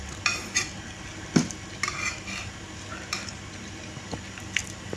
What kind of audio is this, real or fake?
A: real